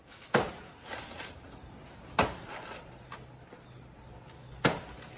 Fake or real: real